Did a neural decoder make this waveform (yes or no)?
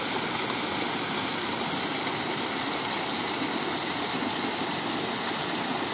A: no